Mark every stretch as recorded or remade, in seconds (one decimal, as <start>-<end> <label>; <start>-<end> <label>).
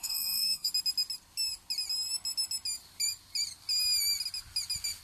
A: 0.0-0.7 remade; 0.7-5.0 recorded